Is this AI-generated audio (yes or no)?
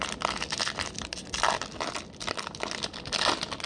no